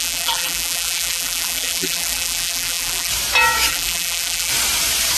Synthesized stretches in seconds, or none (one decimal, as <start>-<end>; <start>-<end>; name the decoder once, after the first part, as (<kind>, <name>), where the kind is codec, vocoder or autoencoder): 0.0-3.1 (vocoder, BigVGAN v2); 3.7-4.5